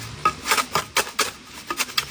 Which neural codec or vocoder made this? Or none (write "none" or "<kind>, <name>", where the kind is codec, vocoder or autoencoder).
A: none